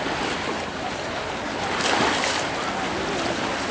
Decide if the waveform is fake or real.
real